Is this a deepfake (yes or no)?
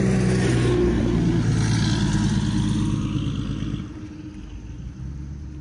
no